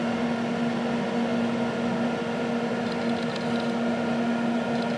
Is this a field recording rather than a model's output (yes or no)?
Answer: yes